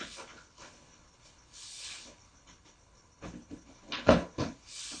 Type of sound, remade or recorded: remade